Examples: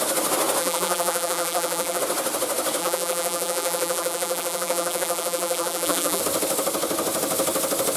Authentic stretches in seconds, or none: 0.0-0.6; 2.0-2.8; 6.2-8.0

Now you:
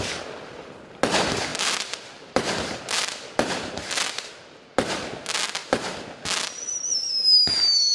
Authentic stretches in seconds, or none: 0.0-1.5; 4.5-7.9

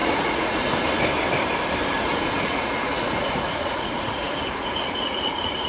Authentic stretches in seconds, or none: 0.6-2.1

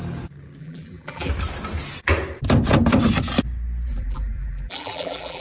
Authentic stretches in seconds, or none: 0.0-0.6; 1.3-3.9

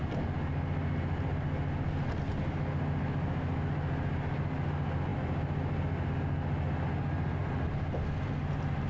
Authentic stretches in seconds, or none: 0.0-8.9

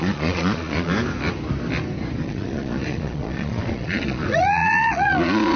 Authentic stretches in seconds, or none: 0.9-2.2

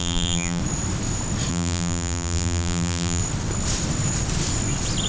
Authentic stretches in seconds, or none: 0.6-1.5; 3.2-5.1